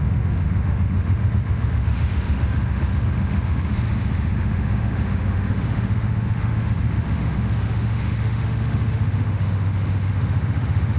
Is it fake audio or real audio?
fake